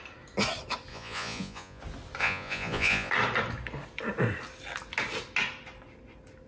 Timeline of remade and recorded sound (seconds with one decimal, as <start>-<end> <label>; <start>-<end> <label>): 0.0-0.9 recorded; 0.9-1.8 remade; 1.8-2.2 recorded; 2.2-3.1 remade; 3.1-6.5 recorded